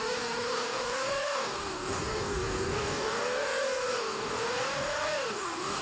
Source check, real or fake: fake